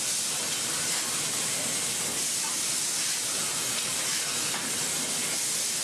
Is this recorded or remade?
recorded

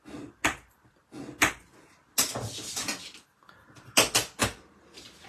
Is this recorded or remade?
recorded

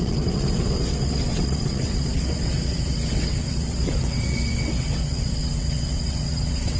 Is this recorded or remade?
remade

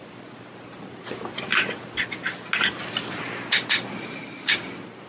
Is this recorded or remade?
recorded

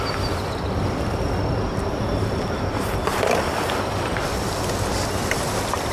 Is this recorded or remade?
recorded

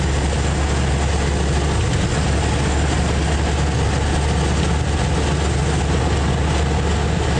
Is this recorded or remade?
recorded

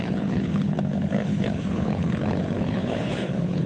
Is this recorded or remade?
remade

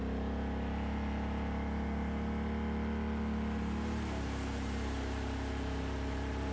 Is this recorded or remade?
recorded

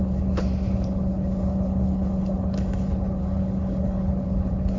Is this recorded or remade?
remade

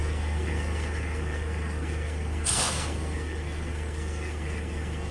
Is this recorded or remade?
remade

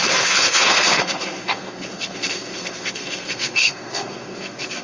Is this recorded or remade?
remade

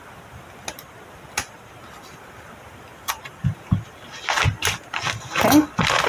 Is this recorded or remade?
recorded